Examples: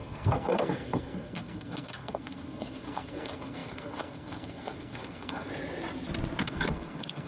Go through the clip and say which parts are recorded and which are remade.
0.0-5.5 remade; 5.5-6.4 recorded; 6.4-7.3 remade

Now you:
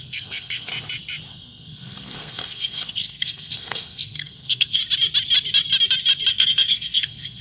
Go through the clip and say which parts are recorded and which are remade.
0.0-0.7 remade; 0.7-1.3 recorded; 1.3-4.8 remade; 4.8-6.3 recorded; 6.3-7.4 remade

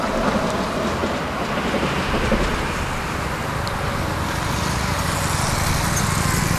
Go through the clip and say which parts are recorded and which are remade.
0.0-6.6 recorded

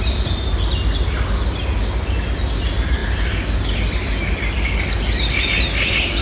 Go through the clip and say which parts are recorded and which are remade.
0.0-6.2 recorded

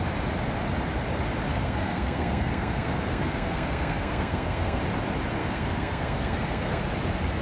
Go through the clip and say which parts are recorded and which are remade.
0.0-1.5 recorded; 1.5-4.8 remade; 4.8-5.4 recorded; 5.4-6.8 remade; 6.8-7.4 recorded

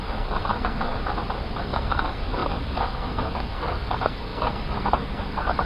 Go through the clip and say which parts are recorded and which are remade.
0.0-1.0 remade; 1.0-1.6 recorded; 1.6-5.7 remade

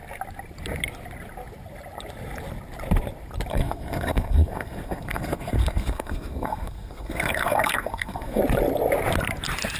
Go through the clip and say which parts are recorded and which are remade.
0.0-3.5 recorded; 3.5-8.4 remade; 8.4-9.8 recorded